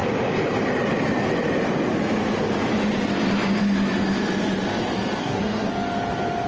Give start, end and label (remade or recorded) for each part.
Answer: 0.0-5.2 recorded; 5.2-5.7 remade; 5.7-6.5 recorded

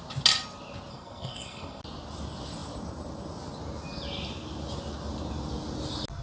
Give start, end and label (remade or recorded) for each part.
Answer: 0.0-0.9 recorded; 0.9-1.8 remade; 1.8-6.2 recorded

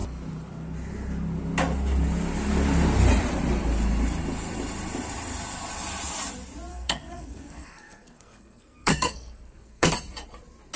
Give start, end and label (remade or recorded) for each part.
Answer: 0.0-6.7 recorded; 6.7-9.9 remade; 9.9-10.8 recorded